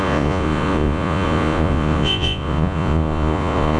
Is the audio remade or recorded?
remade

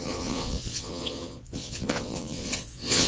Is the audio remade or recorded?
remade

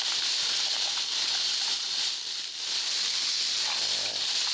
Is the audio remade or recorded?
recorded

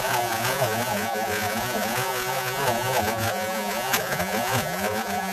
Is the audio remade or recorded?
remade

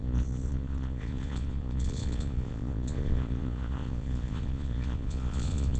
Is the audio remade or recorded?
remade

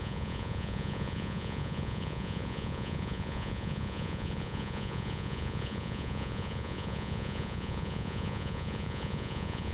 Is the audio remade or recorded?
remade